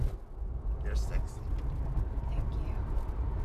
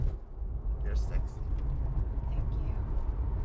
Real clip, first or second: second